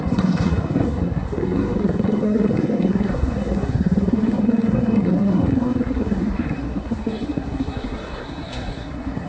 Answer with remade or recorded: remade